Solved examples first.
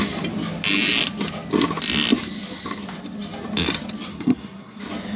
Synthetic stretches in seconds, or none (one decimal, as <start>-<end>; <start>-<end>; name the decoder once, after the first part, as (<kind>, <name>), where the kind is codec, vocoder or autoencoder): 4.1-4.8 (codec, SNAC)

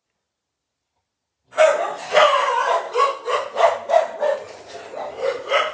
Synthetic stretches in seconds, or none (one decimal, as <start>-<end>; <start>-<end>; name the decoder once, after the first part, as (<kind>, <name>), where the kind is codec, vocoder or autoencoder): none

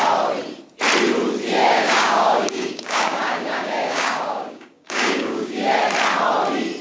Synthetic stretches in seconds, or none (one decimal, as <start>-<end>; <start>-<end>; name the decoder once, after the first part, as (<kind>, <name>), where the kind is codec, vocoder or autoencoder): 1.6-5.7 (codec, DAC)

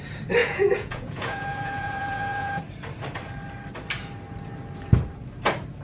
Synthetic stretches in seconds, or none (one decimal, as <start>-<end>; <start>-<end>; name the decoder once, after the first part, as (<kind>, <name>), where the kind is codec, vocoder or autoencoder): 0.4-2.6 (vocoder, Vocos)

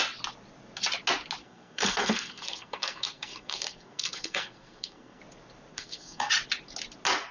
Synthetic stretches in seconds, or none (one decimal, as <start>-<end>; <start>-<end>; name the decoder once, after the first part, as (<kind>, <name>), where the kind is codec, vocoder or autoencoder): 1.4-5.2 (codec, SNAC); 5.7-6.3

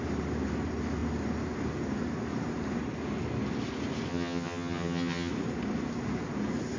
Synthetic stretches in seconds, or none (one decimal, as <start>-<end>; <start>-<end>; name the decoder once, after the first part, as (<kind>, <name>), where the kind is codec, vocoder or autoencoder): 4.1-5.3 (vocoder, HiFi-GAN)

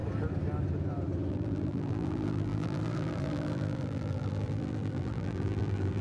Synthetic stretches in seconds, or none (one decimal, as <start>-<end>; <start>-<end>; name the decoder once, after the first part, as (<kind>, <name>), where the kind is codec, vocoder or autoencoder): 1.3-6.0 (vocoder, BigVGAN v2)